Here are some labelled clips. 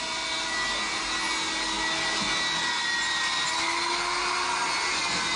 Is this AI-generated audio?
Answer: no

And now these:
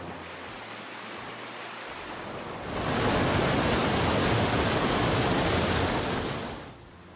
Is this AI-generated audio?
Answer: no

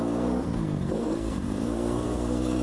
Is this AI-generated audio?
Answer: yes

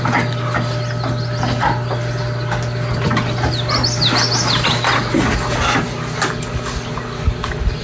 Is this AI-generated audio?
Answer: no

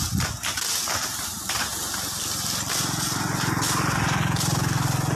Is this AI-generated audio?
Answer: no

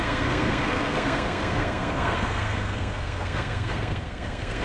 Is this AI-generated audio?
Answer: yes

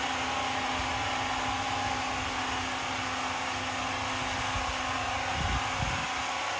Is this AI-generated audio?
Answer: no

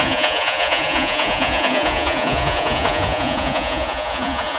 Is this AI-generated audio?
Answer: yes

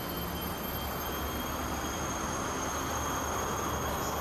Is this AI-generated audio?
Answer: no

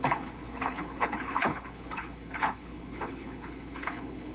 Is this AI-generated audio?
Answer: yes